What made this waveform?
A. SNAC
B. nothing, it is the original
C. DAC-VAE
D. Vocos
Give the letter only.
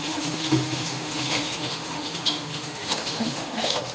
C